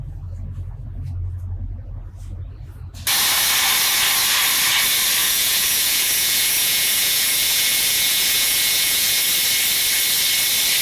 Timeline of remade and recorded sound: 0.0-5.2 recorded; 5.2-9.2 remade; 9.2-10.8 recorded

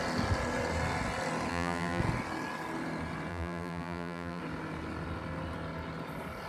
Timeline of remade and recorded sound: 0.0-1.5 recorded; 1.5-2.0 remade; 2.0-3.3 recorded; 3.3-4.4 remade; 4.4-6.5 recorded

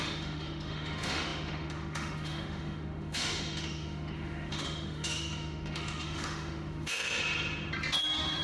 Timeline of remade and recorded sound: 0.0-7.2 remade; 7.2-8.0 recorded; 8.0-8.4 remade

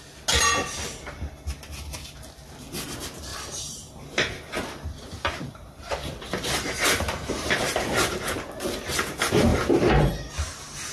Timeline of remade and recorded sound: 0.0-3.3 recorded; 3.3-8.1 remade; 8.1-9.5 recorded; 9.5-10.1 remade; 10.1-10.9 recorded